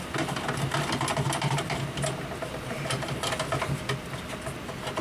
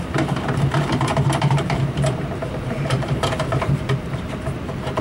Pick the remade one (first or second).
second